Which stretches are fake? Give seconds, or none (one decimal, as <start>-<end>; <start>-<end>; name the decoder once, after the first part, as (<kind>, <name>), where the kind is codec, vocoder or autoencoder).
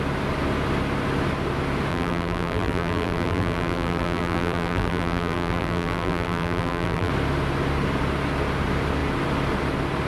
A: 1.9-7.1 (vocoder, BigVGAN v2)